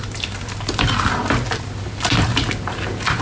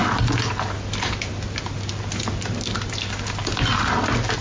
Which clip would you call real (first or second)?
second